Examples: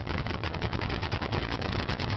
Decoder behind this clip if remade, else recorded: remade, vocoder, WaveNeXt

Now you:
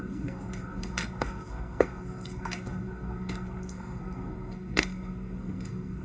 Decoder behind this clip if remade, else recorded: remade, codec, SNAC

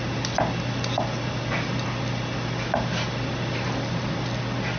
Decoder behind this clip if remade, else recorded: recorded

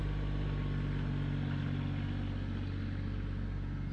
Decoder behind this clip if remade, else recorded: recorded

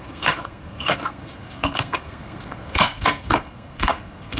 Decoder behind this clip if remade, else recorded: remade, codec, SNAC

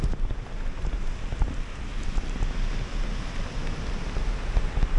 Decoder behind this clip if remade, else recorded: recorded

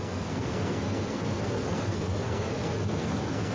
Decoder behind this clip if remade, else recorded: remade, codec, SNAC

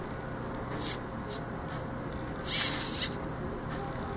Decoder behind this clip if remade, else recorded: recorded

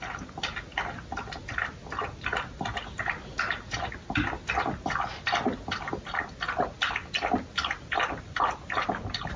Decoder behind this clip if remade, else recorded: recorded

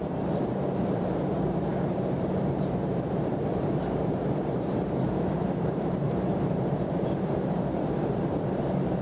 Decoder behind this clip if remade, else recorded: remade, vocoder, BigVGAN v2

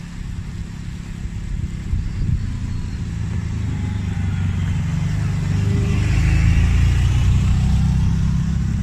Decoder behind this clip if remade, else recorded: recorded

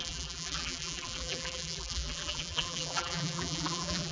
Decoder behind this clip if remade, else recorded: remade, vocoder, BigVGAN v2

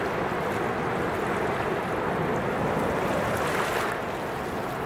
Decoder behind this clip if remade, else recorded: recorded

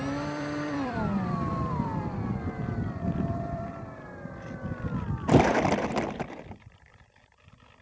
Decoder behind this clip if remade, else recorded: remade, vocoder, BigVGAN v2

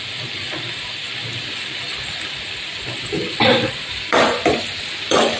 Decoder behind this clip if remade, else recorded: remade, vocoder, BigVGAN v2